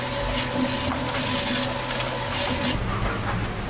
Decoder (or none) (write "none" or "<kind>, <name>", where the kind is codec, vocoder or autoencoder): none